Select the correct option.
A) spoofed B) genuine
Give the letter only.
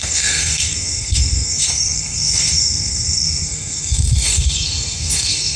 A